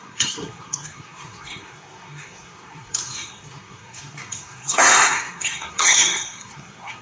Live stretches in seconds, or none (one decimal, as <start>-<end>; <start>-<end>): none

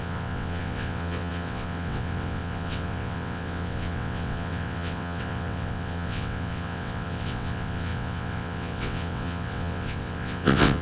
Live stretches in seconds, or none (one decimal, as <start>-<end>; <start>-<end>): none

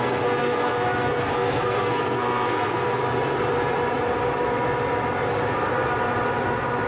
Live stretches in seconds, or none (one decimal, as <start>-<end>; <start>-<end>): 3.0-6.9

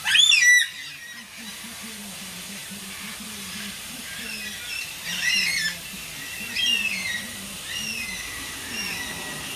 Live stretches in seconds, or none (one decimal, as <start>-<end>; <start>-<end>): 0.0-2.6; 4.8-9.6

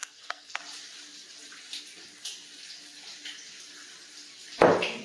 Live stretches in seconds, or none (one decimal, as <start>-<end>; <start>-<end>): 0.6-5.0